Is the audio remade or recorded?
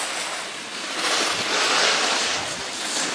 recorded